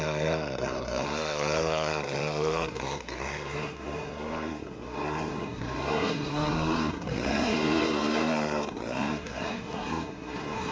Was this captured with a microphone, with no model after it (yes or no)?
no